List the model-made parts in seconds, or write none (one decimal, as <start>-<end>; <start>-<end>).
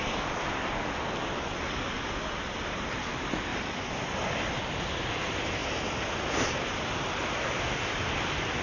none